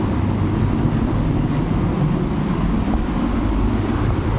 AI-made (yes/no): no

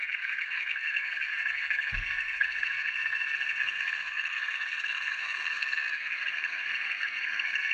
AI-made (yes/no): yes